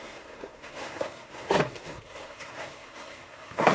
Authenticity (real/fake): fake